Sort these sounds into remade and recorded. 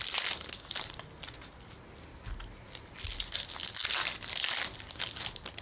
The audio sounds recorded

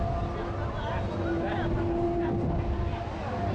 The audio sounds recorded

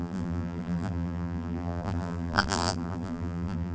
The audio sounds remade